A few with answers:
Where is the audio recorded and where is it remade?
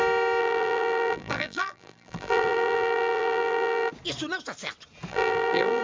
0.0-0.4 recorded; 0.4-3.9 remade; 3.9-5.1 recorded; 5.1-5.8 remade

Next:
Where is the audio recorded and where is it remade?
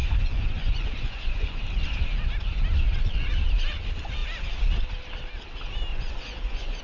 0.0-1.6 remade; 1.6-5.9 recorded; 5.9-6.8 remade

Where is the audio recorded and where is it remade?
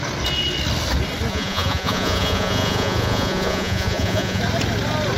0.0-1.3 recorded; 1.3-4.4 remade; 4.4-5.2 recorded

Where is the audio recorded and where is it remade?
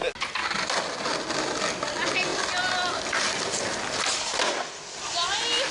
0.0-5.7 recorded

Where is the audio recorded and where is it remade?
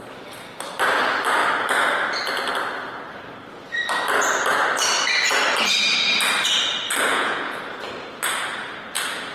0.0-7.1 recorded; 7.1-7.6 remade; 7.6-9.3 recorded